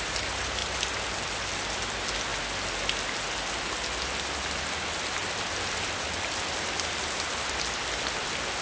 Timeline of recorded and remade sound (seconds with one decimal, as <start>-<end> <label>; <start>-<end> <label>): 0.0-8.6 recorded